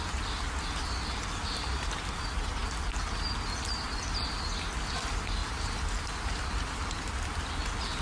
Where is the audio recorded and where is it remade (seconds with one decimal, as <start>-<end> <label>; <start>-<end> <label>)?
0.0-5.4 recorded; 5.4-7.5 remade; 7.5-8.0 recorded